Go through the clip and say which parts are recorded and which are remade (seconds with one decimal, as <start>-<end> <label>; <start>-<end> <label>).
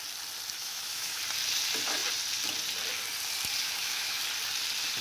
0.0-0.6 recorded; 0.6-1.2 remade; 1.2-3.6 recorded; 3.6-4.2 remade; 4.2-5.0 recorded